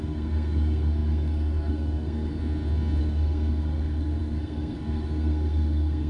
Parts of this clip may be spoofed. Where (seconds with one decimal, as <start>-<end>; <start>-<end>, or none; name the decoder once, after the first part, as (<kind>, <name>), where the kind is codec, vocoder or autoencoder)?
0.0-2.4 (codec, SNAC); 3.0-6.1